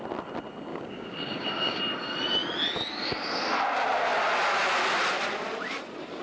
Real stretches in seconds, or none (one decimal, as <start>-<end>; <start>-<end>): 0.0-0.7; 1.8-6.2